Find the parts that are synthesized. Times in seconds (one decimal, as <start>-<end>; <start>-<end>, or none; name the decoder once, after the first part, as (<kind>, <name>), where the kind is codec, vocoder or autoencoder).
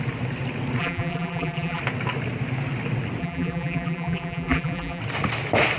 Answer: 0.8-1.8 (vocoder, BigVGAN v2); 3.2-5.0